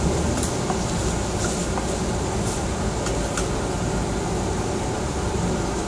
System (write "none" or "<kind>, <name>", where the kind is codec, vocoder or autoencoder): none